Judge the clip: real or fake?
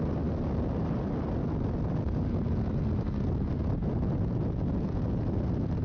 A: real